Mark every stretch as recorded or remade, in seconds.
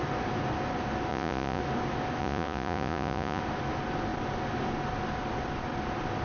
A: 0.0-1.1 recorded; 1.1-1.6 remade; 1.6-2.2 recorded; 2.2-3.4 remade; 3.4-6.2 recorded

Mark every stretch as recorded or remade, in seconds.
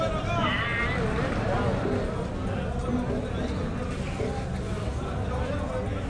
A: 0.0-6.1 recorded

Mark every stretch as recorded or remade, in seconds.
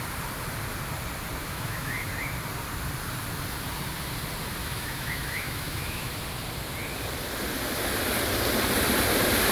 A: 0.0-1.4 recorded; 1.4-2.1 remade; 2.1-4.6 recorded; 4.6-6.1 remade; 6.1-9.5 recorded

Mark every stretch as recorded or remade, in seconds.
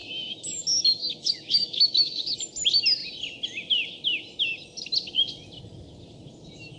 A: 0.0-0.6 remade; 0.6-1.0 recorded; 1.0-2.4 remade; 2.4-6.8 recorded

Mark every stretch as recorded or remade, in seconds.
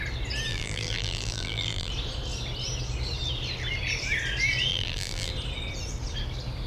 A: 0.0-0.5 recorded; 0.5-1.9 remade; 1.9-4.7 recorded; 4.7-5.3 remade; 5.3-6.7 recorded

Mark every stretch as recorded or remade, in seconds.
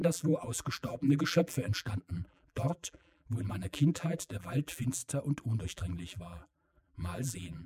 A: 0.0-5.0 remade; 5.0-5.6 recorded; 5.6-7.7 remade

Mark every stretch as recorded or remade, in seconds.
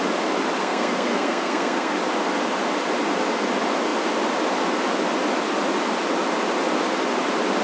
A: 0.0-0.6 recorded; 0.6-1.9 remade; 1.9-7.6 recorded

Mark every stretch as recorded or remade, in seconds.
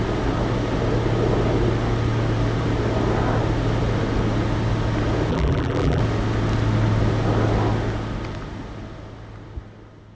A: 0.0-5.3 recorded; 5.3-6.0 remade; 6.0-10.2 recorded